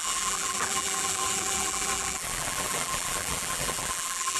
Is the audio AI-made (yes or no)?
yes